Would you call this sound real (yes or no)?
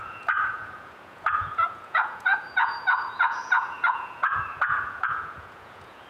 no